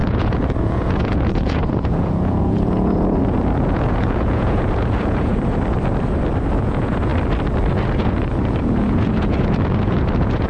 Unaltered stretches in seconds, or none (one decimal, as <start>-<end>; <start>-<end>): 5.3-6.6; 7.1-7.7